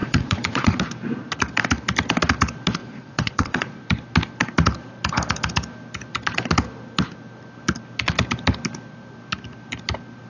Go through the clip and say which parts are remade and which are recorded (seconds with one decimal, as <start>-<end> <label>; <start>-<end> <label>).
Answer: 0.0-0.8 remade; 0.8-2.8 recorded; 2.8-3.8 remade; 3.8-10.3 recorded